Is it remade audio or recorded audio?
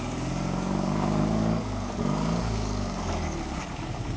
remade